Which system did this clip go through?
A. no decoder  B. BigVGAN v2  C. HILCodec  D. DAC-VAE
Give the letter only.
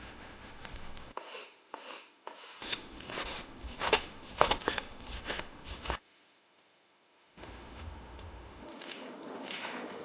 D